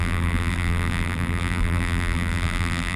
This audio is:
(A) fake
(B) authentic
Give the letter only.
A